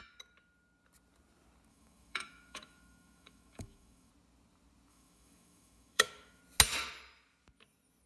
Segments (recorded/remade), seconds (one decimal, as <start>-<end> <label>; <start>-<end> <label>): 0.0-1.7 recorded; 1.7-4.1 remade; 4.1-4.9 recorded; 4.9-6.4 remade; 6.4-8.1 recorded

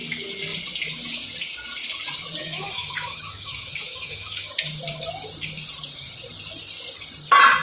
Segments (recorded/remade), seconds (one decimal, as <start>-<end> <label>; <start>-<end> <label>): 0.0-2.4 recorded; 2.4-4.5 remade; 4.5-7.6 recorded

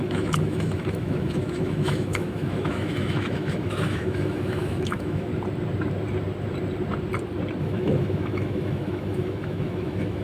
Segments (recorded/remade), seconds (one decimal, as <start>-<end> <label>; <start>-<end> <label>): 0.0-5.3 remade; 5.3-7.6 recorded; 7.6-10.2 remade